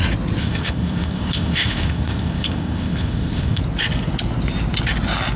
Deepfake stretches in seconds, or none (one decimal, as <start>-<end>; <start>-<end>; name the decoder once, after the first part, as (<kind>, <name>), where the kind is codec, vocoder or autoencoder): 0.4-3.6 (codec, ZipCodec)